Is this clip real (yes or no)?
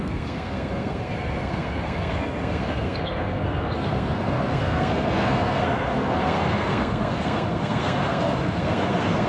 no